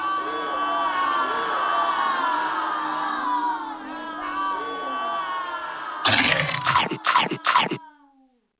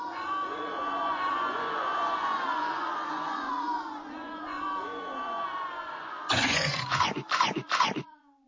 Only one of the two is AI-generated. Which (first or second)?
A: second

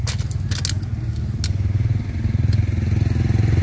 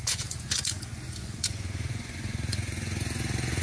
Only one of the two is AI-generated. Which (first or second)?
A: second